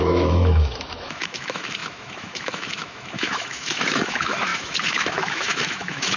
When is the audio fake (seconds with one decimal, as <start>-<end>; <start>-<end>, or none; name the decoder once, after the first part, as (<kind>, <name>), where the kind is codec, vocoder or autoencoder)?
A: 0.0-6.2 (autoencoder, DAC-VAE)